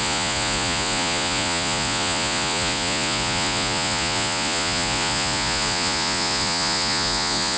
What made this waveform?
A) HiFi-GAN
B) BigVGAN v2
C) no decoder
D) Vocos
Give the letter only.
D